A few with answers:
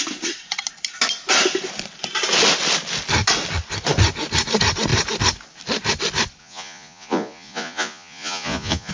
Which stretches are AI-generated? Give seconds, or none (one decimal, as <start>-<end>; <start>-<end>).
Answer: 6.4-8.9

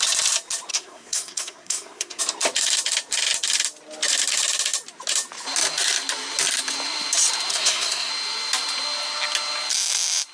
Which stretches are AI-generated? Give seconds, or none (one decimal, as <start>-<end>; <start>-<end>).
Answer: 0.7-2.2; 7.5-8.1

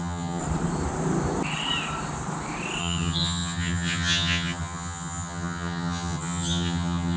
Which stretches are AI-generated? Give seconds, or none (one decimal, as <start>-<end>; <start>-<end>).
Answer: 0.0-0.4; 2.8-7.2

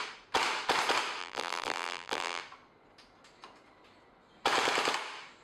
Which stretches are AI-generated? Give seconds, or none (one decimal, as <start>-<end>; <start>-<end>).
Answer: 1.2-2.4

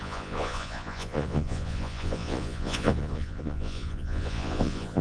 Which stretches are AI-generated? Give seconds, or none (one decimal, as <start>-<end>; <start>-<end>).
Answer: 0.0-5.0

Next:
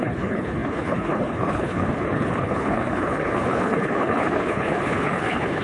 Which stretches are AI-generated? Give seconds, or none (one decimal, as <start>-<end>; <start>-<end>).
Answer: 0.0-5.6

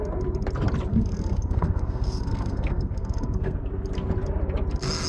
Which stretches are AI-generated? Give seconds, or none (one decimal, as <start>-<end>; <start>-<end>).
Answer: 0.9-3.6